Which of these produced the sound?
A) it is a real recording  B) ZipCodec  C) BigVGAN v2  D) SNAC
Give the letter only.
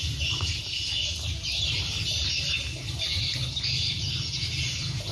C